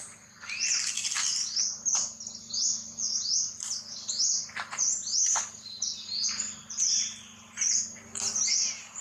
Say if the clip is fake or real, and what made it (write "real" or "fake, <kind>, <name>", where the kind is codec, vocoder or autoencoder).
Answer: real